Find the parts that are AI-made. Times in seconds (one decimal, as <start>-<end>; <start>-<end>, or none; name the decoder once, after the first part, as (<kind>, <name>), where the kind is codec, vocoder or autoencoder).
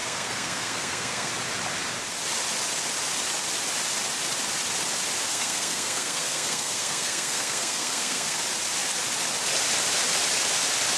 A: 0.0-1.3 (codec, SNAC); 5.3-8.4